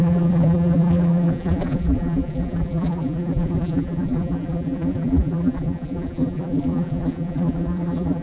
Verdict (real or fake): fake